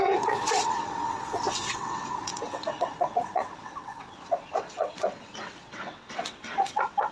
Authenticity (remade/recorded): remade